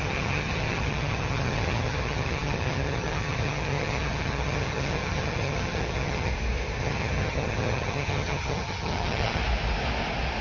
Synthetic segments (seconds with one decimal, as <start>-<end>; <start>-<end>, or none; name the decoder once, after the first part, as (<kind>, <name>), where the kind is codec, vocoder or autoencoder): 0.0-6.3 (vocoder, HiFi-GAN); 6.8-9.4